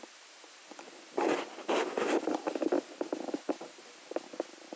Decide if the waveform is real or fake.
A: fake